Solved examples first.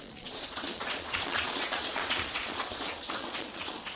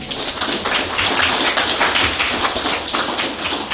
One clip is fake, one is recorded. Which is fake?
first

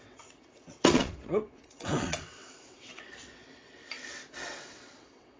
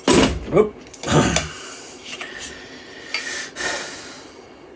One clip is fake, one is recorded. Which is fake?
first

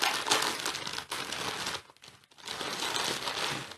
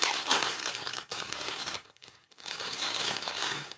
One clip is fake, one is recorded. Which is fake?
second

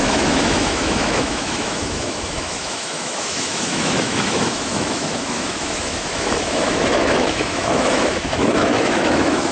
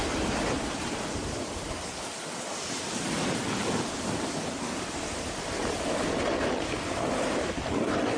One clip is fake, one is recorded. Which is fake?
first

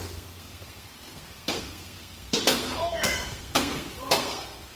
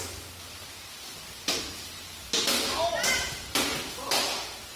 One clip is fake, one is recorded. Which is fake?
first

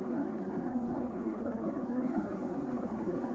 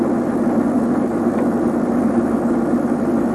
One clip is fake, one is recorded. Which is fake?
first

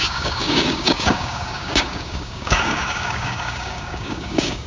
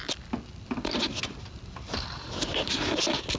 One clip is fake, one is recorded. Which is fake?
first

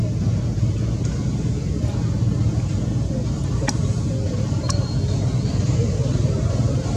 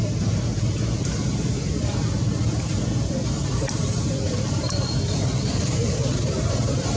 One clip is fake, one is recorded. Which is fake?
second